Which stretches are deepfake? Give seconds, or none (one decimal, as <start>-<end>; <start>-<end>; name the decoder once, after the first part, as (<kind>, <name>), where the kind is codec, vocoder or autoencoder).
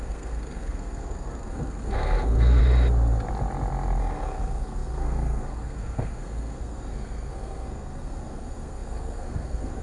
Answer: 0.0-2.6 (codec, SNAC); 4.0-9.8